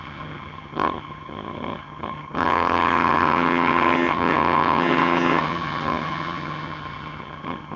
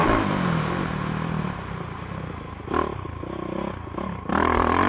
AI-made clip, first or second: first